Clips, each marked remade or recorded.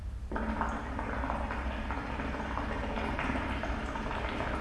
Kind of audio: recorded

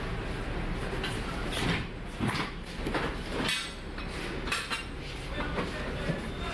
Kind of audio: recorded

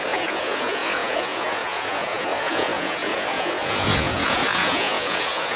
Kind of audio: remade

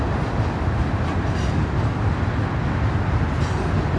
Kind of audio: recorded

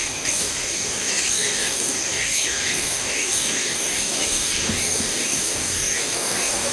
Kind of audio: remade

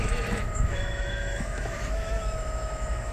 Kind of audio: remade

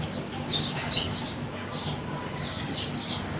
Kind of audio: remade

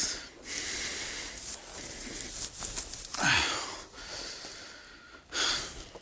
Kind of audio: recorded